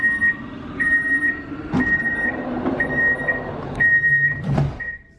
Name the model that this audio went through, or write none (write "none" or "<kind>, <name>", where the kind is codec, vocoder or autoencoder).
vocoder, BigVGAN v2